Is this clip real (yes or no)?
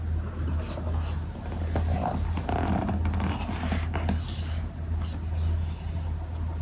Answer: yes